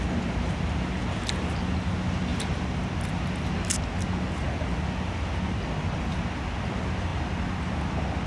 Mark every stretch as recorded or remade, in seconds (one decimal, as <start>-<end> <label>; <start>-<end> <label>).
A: 0.0-8.3 recorded